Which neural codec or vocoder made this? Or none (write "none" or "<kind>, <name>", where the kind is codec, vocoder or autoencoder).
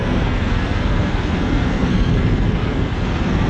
codec, SNAC